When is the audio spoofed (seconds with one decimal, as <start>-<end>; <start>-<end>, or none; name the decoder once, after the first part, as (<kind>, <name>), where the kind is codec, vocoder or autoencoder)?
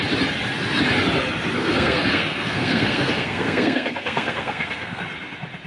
1.6-5.0 (codec, SNAC)